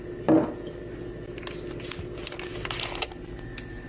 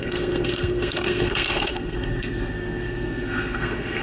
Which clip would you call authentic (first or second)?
first